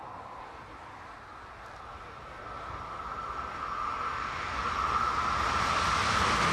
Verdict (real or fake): real